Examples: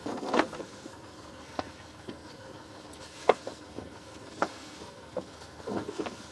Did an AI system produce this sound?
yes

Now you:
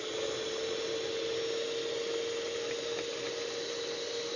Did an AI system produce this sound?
no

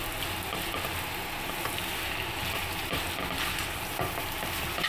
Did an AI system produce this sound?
no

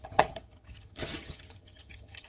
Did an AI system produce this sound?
yes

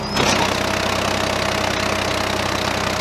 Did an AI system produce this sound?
no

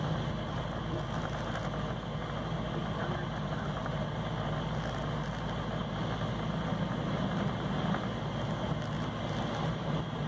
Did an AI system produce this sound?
no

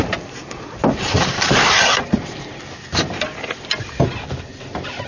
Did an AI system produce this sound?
no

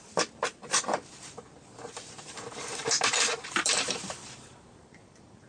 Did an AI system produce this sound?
yes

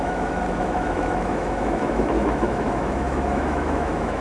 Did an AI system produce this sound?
yes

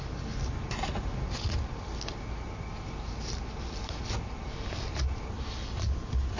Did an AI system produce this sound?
no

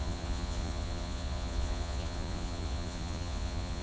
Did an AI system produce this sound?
yes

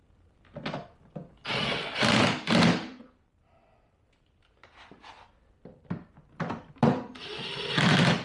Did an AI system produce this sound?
no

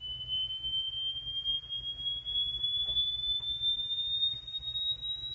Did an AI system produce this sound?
no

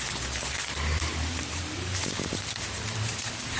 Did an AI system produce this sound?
yes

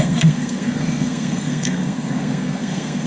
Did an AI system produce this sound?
yes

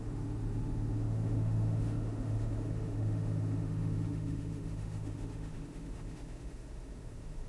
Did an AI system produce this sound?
yes